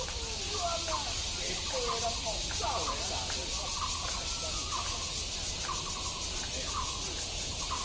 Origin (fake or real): real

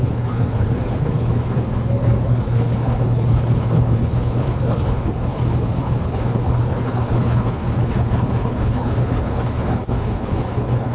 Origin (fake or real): fake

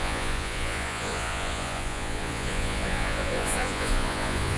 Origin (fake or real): fake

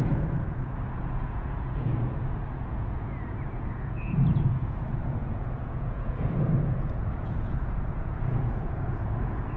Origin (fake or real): fake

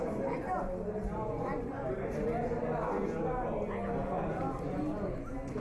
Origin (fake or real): real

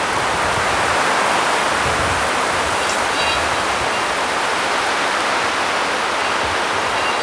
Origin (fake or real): real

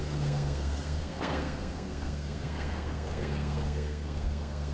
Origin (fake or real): fake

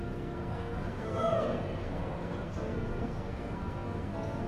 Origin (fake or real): fake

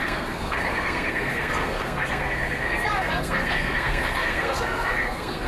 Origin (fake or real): fake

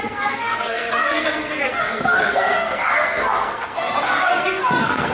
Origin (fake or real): fake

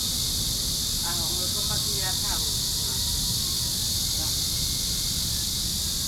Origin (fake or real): real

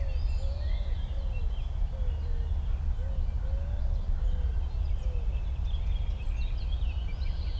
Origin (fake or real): real